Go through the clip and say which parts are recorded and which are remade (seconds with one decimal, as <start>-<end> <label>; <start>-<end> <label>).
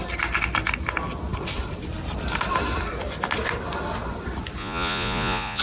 0.0-4.6 recorded; 4.6-5.6 remade